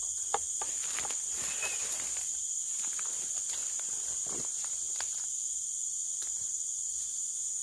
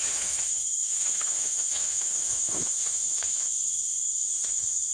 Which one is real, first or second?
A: first